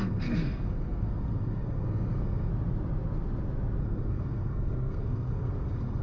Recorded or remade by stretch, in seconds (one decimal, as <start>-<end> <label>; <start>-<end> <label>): 0.0-2.5 remade; 2.5-3.8 recorded; 3.8-6.0 remade